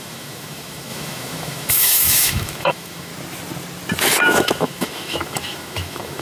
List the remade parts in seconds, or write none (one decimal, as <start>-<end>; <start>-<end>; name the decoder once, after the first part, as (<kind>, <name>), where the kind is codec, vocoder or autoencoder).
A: 0.0-3.1 (autoencoder, DAC-VAE); 4.2-6.2